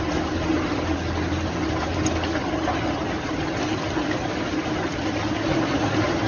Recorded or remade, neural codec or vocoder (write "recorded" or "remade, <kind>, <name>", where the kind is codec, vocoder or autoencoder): recorded